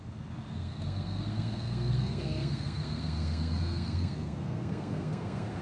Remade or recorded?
remade